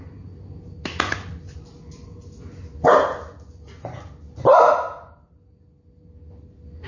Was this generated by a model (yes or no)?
no